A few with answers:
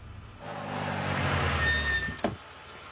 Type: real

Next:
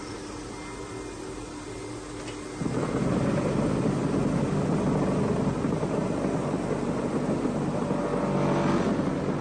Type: real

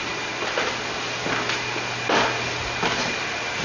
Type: real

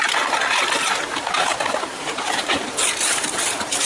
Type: fake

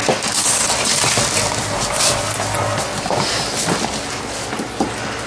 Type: real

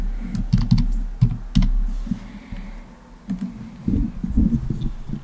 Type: real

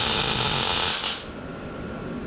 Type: real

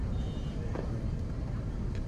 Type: fake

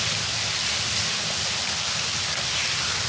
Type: real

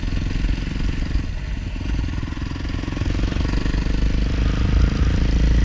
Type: real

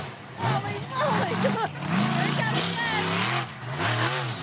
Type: real